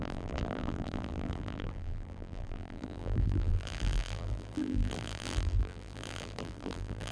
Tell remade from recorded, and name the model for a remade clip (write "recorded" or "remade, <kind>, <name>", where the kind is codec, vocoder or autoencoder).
remade, vocoder, BigVGAN v2